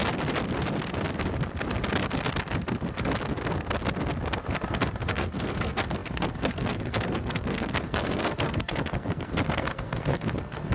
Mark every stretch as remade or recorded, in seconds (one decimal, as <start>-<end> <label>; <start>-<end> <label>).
0.0-5.1 recorded; 5.1-10.7 remade